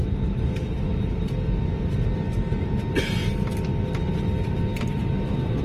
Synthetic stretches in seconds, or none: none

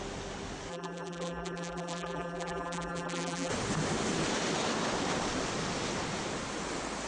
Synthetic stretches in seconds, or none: 0.7-3.5 (vocoder, BigVGAN v2)

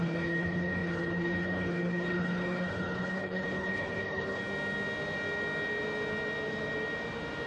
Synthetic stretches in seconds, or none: 0.0-4.4 (codec, HILCodec)